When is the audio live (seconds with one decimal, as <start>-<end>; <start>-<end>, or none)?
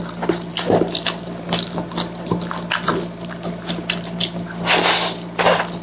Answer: 0.0-0.5; 2.5-5.8